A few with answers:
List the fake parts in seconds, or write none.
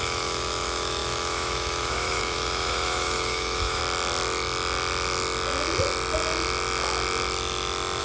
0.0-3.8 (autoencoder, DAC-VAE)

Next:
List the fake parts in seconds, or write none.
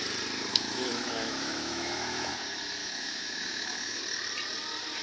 0.5-2.3 (autoencoder, DAC-VAE); 2.8-4.0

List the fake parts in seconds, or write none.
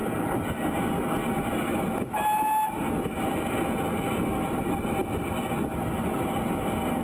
none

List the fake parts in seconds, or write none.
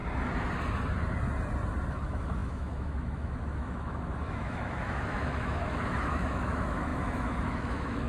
1.9-8.1 (autoencoder, DAC-VAE)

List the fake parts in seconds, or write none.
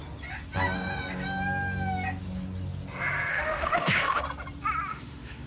3.3-4.2 (autoencoder, DAC-VAE); 4.9-5.5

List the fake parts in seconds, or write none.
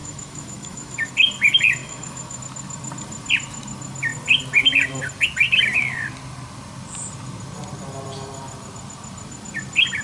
0.0-1.1 (autoencoder, DAC-VAE); 1.8-2.4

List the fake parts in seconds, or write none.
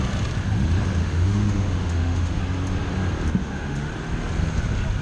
1.0-2.4 (autoencoder, DAC-VAE); 3.4-3.9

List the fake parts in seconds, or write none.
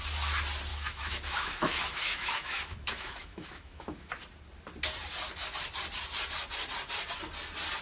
0.7-4.1 (autoencoder, DAC-VAE)